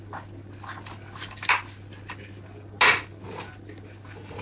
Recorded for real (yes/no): yes